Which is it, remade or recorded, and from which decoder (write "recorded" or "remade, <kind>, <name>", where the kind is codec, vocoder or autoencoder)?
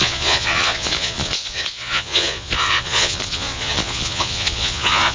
remade, vocoder, Vocos